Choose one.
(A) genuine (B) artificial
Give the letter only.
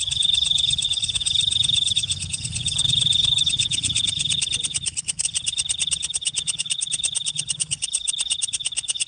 B